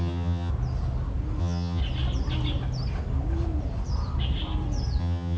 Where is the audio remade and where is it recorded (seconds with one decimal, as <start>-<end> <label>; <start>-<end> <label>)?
0.0-0.5 remade; 0.5-1.4 recorded; 1.4-1.8 remade; 1.8-5.0 recorded; 5.0-5.4 remade